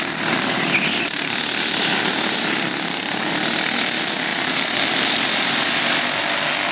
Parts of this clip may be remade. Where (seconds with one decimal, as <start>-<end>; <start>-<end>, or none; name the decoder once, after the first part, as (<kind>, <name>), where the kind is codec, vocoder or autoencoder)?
4.3-5.7 (vocoder, BigVGAN v2)